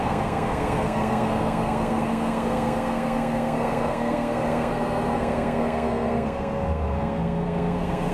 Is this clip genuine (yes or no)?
no